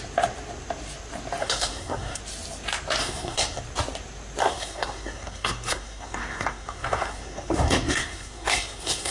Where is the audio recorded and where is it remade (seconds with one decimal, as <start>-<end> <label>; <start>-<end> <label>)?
0.0-1.4 recorded; 1.4-2.2 remade; 2.2-3.0 recorded; 3.0-3.6 remade; 3.6-4.4 recorded; 4.4-9.1 remade